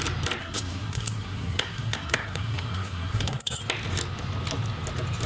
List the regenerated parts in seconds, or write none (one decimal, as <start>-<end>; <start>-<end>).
0.4-3.6